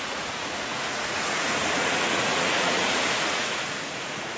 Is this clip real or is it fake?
fake